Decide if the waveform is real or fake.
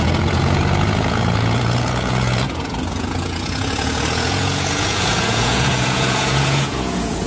fake